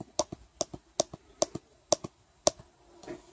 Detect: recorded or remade recorded